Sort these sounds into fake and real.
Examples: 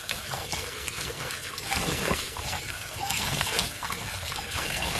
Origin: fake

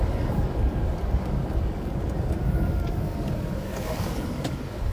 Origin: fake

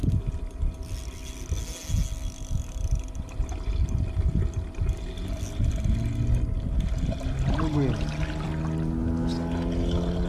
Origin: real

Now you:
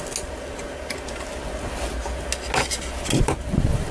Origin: real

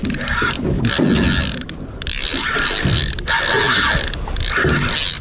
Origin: real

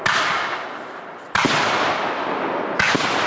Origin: real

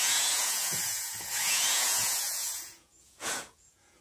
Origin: fake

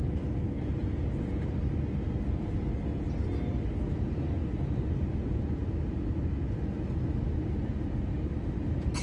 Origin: real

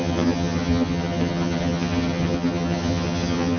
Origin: fake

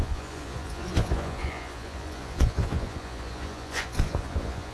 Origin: fake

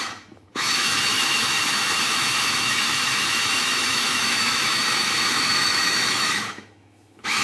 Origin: fake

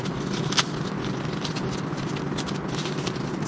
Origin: real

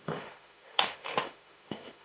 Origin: fake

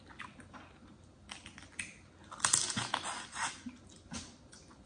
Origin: real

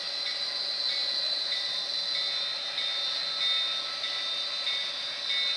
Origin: real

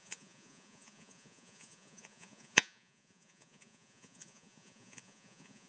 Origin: fake